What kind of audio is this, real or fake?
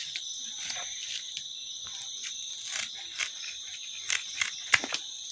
real